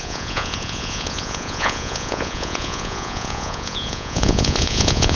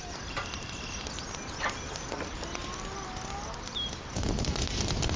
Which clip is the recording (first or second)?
second